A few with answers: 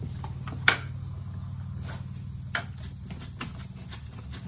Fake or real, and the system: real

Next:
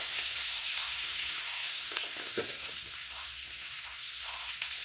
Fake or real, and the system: fake, codec, SNAC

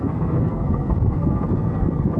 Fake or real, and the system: fake, codec, SNAC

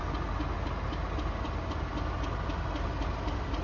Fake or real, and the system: real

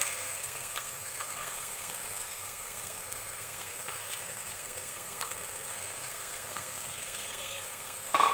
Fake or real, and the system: fake, codec, SNAC